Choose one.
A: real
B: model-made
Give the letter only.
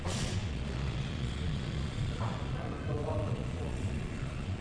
B